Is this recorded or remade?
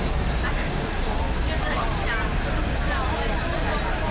recorded